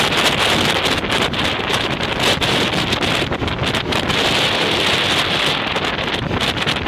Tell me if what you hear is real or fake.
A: real